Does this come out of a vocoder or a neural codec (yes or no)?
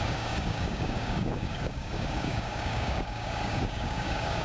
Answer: yes